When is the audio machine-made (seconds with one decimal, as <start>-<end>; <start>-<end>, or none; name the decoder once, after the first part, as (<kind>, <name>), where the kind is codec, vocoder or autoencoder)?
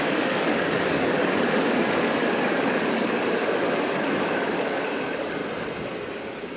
0.0-5.4 (codec, DAC); 6.1-6.6